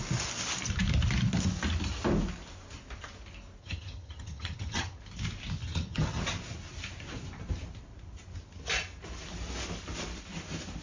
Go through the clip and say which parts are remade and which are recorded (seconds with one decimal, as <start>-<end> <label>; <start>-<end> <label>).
0.0-3.6 recorded; 3.6-5.0 remade; 5.0-5.6 recorded; 5.6-6.2 remade; 6.2-10.8 recorded